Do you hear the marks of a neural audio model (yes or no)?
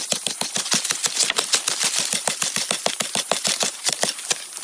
no